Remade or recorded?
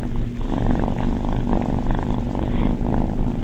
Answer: recorded